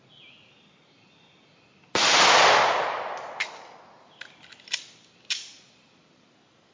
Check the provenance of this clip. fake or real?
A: real